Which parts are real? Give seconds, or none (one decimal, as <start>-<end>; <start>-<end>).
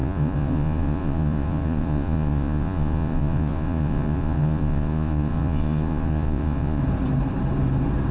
6.8-8.1